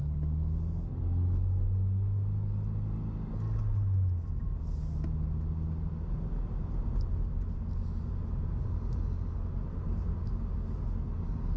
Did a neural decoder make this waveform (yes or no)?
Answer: no